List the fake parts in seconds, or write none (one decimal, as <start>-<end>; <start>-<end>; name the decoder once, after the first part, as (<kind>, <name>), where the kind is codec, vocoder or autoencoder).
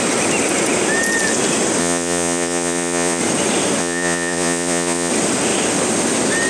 1.8-3.2 (vocoder, Vocos); 3.8-5.1